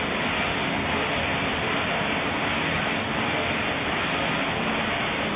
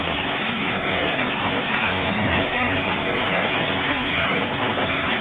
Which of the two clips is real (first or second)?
first